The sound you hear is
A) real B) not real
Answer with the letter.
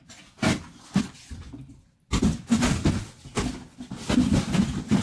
A